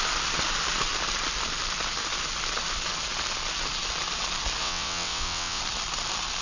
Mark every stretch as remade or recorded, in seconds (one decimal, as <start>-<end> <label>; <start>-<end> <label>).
0.0-4.6 recorded; 4.6-5.6 remade; 5.6-6.4 recorded